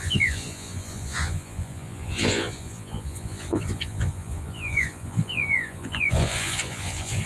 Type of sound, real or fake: fake